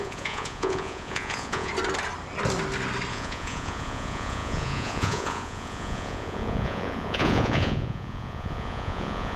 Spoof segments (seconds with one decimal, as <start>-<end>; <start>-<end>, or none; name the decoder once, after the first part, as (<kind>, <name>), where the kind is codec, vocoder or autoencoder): 0.0-1.7 (vocoder, Vocos); 3.1-9.4